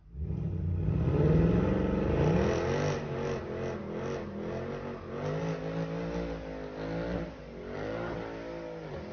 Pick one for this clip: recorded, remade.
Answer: recorded